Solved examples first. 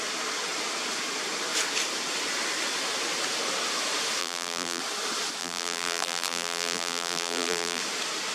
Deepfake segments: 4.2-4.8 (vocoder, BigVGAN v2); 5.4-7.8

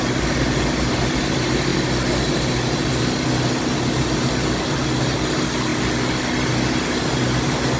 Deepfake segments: none

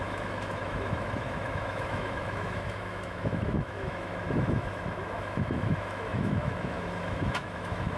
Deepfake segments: 0.0-8.0 (autoencoder, DAC-VAE)